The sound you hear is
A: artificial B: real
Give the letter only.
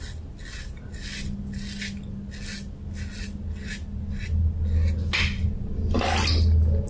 B